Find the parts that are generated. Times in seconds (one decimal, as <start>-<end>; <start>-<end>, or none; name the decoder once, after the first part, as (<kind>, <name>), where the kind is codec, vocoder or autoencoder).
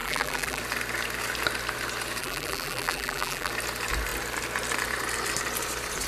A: 0.0-0.6 (vocoder, BigVGAN v2); 2.2-3.5